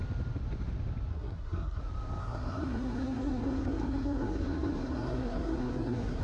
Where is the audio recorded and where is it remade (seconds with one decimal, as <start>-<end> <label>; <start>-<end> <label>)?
0.0-1.1 recorded; 1.1-1.8 remade; 1.8-2.2 recorded; 2.2-6.2 remade